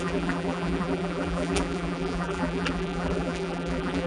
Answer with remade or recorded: remade